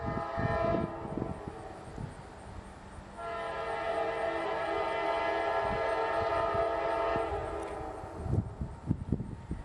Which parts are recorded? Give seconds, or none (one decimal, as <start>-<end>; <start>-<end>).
0.0-9.6